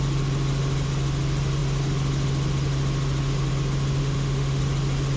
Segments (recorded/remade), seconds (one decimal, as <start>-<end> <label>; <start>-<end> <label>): 0.0-4.0 recorded; 4.0-4.6 remade; 4.6-5.2 recorded